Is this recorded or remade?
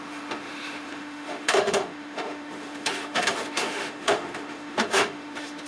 remade